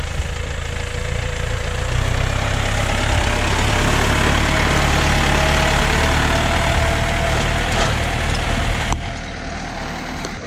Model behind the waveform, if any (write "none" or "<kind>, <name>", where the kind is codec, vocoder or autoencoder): none